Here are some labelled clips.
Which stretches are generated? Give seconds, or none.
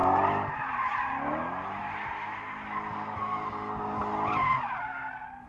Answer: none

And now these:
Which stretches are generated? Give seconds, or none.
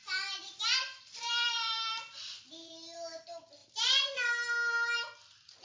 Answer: 0.0-3.2 (vocoder, BigVGAN v2); 3.6-4.3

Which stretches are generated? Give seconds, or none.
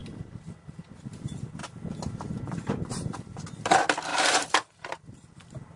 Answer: 0.0-0.9 (vocoder, BigVGAN v2); 4.1-5.8